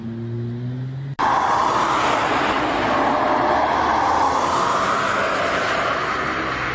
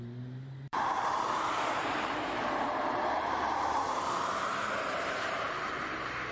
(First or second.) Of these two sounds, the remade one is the second